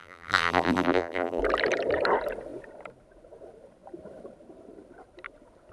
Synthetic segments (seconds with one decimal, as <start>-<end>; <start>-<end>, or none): 0.0-1.4